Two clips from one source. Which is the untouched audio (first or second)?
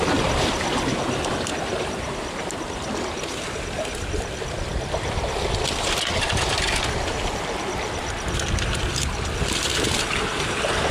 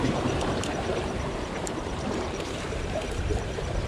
first